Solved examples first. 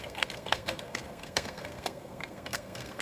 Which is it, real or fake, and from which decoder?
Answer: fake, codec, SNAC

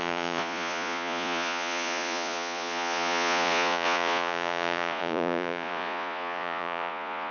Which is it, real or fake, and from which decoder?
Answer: fake, vocoder, Vocos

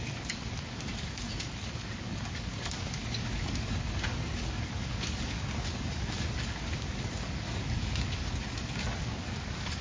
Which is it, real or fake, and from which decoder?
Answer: fake, codec, DAC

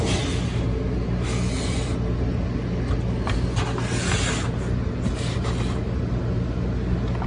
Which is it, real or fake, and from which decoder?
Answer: real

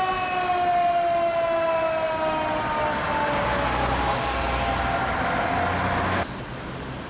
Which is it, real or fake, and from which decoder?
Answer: real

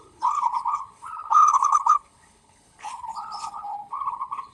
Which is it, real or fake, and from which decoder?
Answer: fake, codec, HILCodec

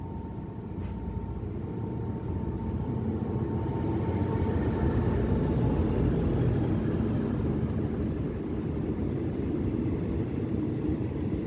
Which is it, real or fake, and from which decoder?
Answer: real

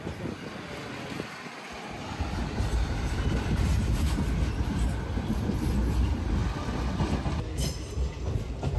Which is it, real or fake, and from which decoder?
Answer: real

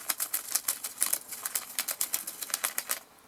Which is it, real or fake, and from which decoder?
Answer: real